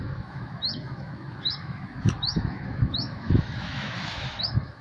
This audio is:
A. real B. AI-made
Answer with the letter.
B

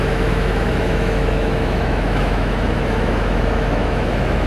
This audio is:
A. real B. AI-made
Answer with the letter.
B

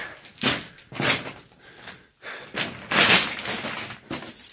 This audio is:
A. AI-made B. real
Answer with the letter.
B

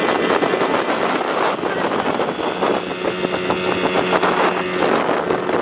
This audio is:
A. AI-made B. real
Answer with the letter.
B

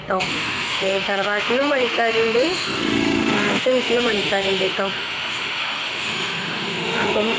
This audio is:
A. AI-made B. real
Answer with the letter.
A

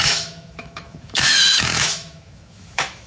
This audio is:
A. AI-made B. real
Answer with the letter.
A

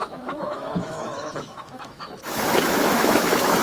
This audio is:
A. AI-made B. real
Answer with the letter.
A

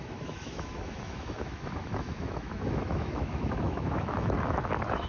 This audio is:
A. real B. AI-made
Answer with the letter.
B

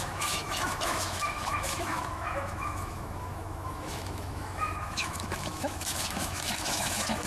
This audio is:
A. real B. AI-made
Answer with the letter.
B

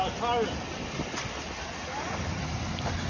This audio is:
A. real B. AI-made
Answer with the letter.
A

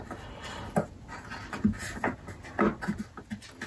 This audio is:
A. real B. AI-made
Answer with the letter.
A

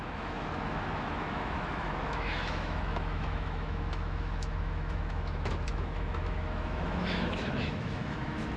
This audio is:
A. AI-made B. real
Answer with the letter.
A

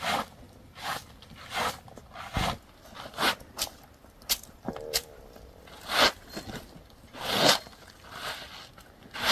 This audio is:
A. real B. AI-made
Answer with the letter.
A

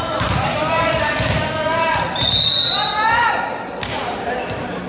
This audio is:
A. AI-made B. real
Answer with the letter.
B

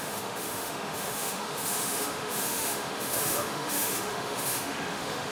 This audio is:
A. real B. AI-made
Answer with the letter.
B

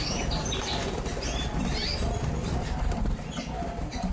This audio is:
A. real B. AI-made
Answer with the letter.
A